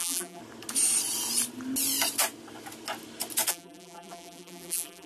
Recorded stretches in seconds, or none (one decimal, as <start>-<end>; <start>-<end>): 0.4-3.5